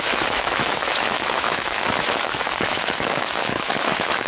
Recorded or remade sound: remade